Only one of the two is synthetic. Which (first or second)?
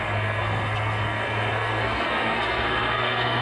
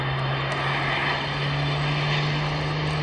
first